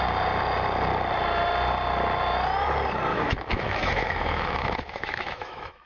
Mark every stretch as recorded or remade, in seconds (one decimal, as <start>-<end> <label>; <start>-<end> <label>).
0.0-3.1 recorded; 3.1-5.9 remade